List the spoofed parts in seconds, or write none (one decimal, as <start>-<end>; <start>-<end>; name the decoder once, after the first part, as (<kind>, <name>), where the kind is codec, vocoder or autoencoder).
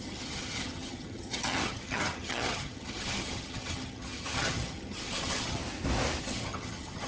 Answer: 0.0-5.6 (vocoder, HiFi-GAN); 6.2-7.1